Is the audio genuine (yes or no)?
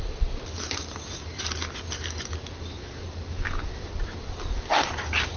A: yes